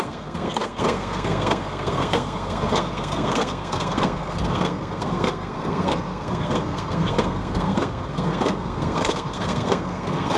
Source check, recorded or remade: remade